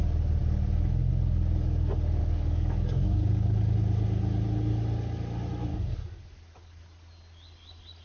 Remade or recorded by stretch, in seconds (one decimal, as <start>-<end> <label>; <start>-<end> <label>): 0.0-2.2 recorded; 2.2-3.7 remade; 3.7-5.7 recorded; 5.7-6.2 remade; 6.2-8.0 recorded